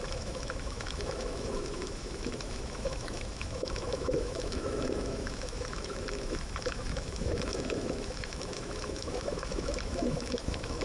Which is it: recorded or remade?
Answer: remade